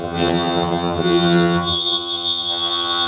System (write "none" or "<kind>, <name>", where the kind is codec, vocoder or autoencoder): vocoder, HiFi-GAN